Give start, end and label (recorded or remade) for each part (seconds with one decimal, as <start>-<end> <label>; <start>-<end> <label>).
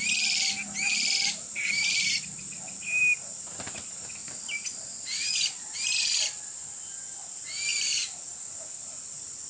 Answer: 0.0-9.5 remade